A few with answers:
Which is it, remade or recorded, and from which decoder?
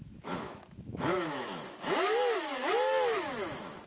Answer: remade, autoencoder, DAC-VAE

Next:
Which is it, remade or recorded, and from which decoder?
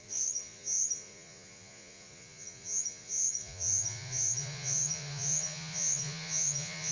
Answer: remade, vocoder, Vocos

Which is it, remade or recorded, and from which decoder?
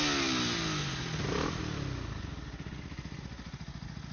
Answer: recorded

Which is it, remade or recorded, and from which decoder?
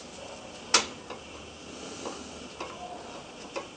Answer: recorded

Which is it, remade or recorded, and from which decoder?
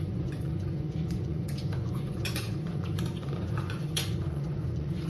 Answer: remade, vocoder, Vocos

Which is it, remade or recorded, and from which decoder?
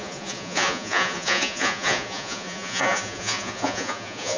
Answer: remade, vocoder, Vocos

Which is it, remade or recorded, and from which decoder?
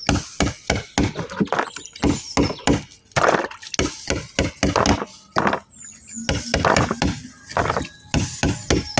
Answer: recorded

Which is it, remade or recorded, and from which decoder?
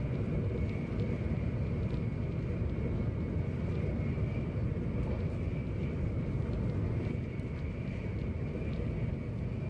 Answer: recorded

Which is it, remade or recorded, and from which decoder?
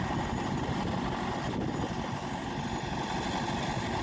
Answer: recorded